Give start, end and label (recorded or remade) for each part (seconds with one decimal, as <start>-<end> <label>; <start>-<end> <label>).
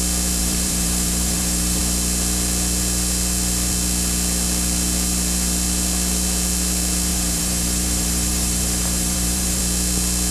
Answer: 0.0-0.4 recorded; 0.4-1.8 remade; 1.8-7.1 recorded; 7.1-9.6 remade; 9.6-10.3 recorded